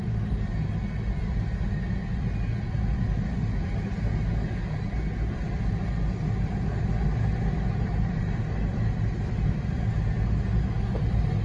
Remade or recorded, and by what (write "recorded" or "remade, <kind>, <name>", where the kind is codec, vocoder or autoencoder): recorded